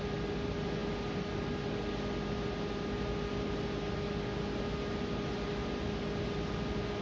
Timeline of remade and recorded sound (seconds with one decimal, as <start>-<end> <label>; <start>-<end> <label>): 0.0-7.0 recorded